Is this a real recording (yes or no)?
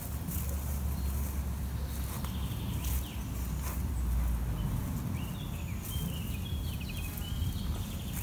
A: yes